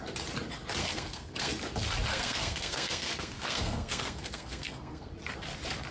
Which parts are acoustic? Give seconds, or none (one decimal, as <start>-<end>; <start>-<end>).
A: 0.0-0.8; 1.5-2.1; 5.1-5.9